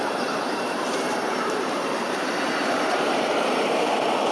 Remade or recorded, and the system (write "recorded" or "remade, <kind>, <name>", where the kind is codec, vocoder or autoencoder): remade, vocoder, BigVGAN v2